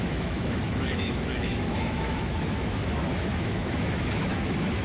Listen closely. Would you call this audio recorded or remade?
remade